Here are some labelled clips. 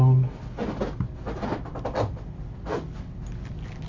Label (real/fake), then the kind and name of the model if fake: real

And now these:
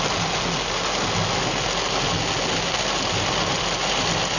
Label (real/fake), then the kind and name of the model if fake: real